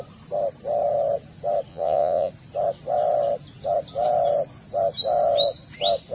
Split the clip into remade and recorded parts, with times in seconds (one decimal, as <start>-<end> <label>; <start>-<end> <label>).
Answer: 0.0-1.7 recorded; 1.7-2.3 remade; 2.3-6.1 recorded